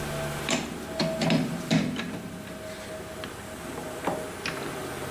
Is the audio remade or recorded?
recorded